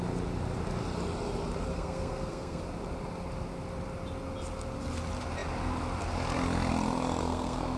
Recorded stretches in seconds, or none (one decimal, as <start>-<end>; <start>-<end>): 0.0-1.7; 2.6-7.2